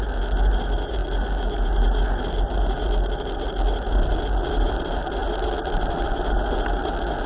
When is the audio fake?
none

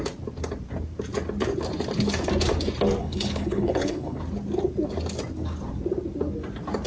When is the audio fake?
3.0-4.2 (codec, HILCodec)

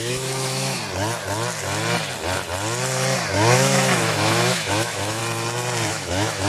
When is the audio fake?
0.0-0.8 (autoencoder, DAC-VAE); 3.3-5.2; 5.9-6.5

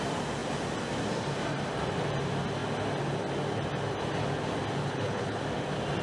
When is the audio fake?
4.8-5.4 (codec, HILCodec)

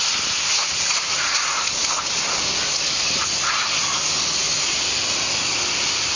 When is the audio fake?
none

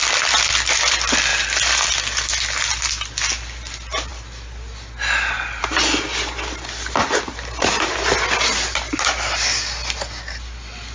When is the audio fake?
none